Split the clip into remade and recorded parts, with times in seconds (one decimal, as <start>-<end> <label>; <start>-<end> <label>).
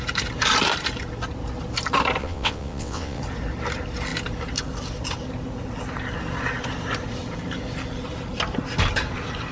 0.0-2.2 recorded; 2.2-3.2 remade; 3.2-9.5 recorded